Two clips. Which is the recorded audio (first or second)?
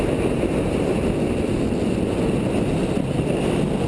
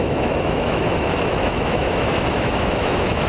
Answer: first